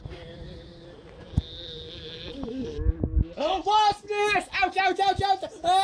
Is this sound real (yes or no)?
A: yes